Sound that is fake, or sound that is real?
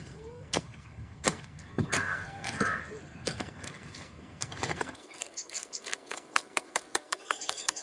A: fake